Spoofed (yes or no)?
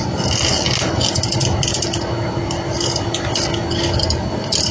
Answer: no